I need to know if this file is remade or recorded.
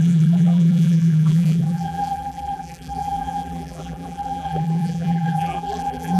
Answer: remade